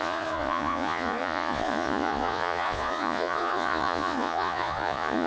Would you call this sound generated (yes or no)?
yes